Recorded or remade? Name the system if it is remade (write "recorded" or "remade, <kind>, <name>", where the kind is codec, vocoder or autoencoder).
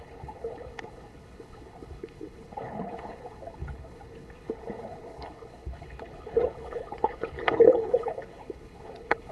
remade, codec, HILCodec